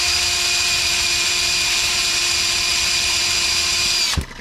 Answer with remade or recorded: remade